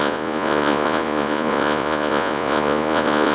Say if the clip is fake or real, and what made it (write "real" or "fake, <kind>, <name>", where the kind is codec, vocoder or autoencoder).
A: fake, vocoder, Vocos